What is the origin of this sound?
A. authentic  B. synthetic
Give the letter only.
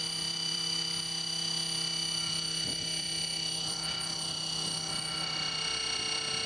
B